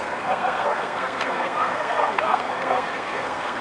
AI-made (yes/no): yes